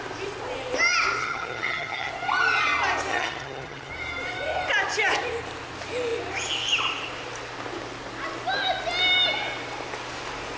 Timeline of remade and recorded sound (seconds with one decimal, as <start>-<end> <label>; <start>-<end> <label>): 0.0-1.2 recorded; 1.2-2.1 remade; 2.1-3.1 recorded; 3.1-3.9 remade; 3.9-10.6 recorded